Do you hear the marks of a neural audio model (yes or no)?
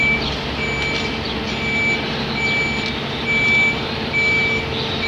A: no